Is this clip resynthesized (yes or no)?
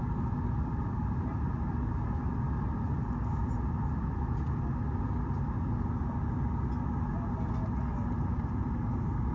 no